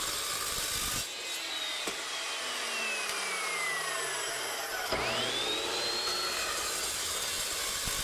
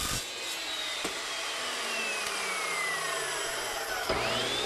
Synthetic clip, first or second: second